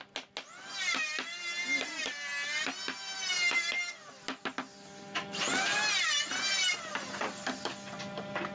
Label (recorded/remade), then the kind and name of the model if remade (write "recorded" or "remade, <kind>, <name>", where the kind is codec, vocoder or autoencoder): recorded